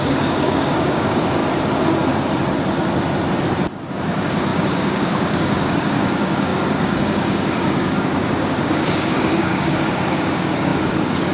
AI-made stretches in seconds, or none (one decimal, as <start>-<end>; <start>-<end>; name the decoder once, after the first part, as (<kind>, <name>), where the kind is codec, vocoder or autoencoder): 0.0-1.4 (codec, DAC); 3.9-11.3